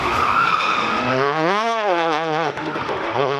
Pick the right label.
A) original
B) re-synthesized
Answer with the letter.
B